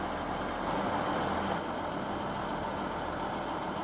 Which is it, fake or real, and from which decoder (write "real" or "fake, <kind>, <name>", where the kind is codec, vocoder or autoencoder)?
real